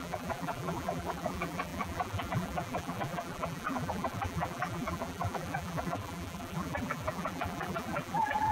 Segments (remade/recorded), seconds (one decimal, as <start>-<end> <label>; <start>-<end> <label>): 0.0-8.5 remade